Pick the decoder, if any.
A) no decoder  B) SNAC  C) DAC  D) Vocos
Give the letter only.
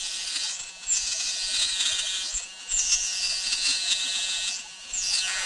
D